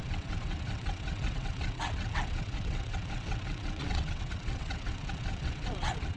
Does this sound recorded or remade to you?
remade